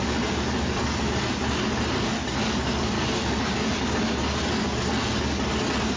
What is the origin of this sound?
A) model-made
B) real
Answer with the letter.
B